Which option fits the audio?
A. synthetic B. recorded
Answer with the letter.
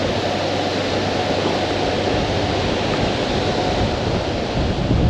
B